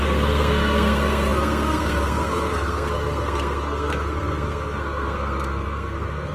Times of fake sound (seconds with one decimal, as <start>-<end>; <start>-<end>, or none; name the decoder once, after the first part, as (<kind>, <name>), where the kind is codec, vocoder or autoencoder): 0.0-6.3 (codec, SNAC)